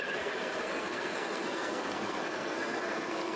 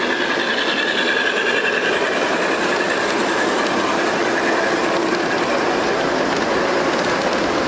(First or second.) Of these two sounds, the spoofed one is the first